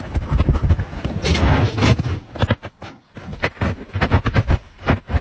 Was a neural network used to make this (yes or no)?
no